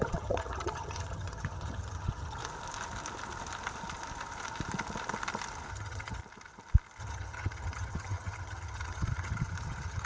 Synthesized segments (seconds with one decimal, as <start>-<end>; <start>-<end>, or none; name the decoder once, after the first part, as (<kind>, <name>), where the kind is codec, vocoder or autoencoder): 0.0-2.4 (vocoder, HiFi-GAN); 5.7-6.2; 7.0-10.1